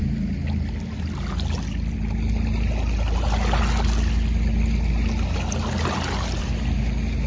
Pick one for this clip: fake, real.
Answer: real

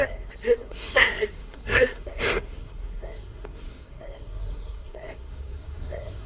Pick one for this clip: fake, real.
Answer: fake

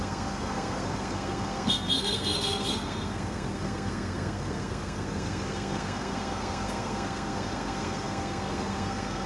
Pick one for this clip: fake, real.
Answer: fake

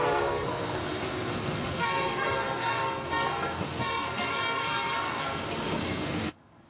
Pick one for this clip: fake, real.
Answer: fake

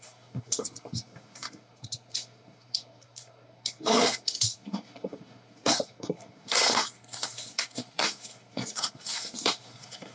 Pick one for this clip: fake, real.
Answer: fake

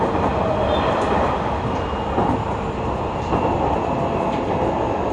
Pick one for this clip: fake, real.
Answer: real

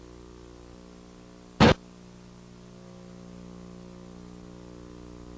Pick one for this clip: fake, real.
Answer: real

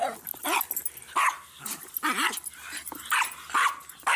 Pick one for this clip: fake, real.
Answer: real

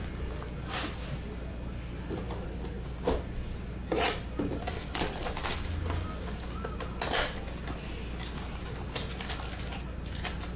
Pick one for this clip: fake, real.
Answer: real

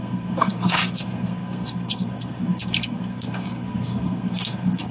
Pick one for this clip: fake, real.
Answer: fake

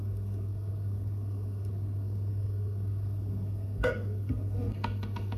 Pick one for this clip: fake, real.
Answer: fake